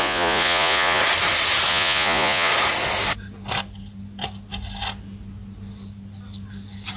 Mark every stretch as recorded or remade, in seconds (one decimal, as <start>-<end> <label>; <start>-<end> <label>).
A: 0.0-1.0 remade; 1.0-1.7 recorded; 1.7-2.5 remade; 2.5-7.0 recorded